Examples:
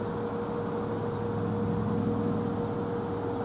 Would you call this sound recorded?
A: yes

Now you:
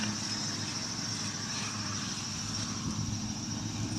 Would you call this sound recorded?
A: yes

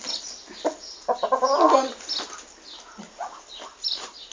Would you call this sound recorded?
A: yes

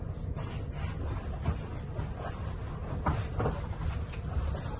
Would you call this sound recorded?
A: yes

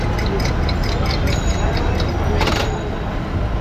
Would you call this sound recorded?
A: yes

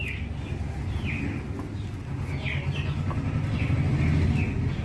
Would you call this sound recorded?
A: yes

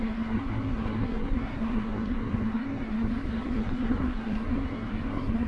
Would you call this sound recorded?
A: no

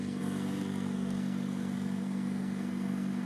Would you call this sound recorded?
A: no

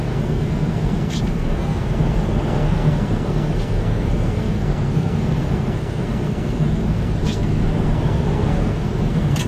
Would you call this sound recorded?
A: no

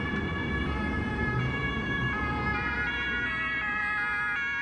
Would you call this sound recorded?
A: yes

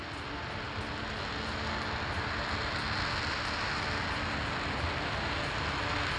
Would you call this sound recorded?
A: yes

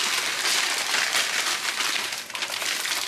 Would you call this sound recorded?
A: yes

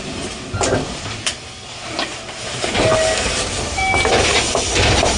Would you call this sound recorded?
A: yes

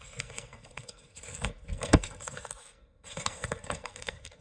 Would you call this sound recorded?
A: no